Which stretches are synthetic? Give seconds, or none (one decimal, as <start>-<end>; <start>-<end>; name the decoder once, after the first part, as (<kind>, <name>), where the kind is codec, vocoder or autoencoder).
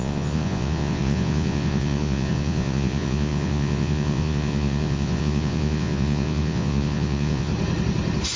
0.0-7.5 (vocoder, Vocos)